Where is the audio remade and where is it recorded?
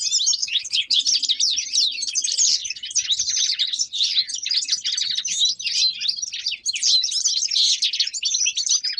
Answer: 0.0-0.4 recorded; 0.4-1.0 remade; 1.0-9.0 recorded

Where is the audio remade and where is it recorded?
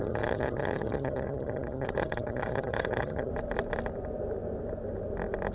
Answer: 0.0-3.3 remade; 3.3-5.5 recorded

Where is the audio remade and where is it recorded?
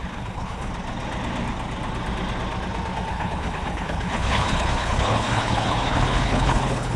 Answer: 0.0-0.7 remade; 0.7-3.1 recorded; 3.1-7.0 remade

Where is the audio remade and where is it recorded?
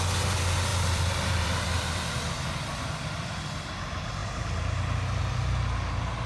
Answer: 0.0-0.7 recorded; 0.7-3.7 remade; 3.7-6.3 recorded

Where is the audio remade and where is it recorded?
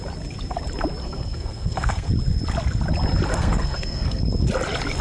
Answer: 0.0-1.0 recorded; 1.0-2.1 remade; 2.1-3.3 recorded; 3.3-4.2 remade; 4.2-5.0 recorded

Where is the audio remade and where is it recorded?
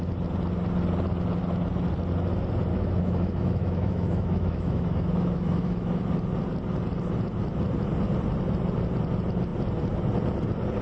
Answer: 0.0-2.7 recorded; 2.7-6.0 remade; 6.0-10.8 recorded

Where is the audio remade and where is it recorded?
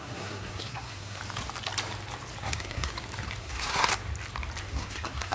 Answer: 0.0-1.2 remade; 1.2-2.4 recorded; 2.4-2.9 remade; 2.9-3.4 recorded; 3.4-3.9 remade; 3.9-4.6 recorded; 4.6-5.3 remade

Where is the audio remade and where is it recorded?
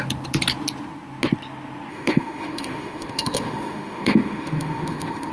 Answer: 0.0-1.9 recorded; 1.9-5.3 remade